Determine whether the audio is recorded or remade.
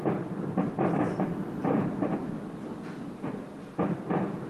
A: recorded